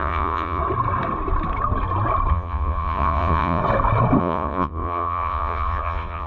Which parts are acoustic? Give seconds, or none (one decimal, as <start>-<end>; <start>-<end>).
0.6-2.3; 3.6-4.2